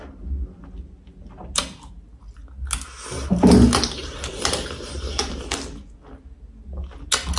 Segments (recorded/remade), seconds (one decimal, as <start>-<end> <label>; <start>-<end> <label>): 0.0-4.0 recorded; 4.0-5.8 remade; 5.8-7.4 recorded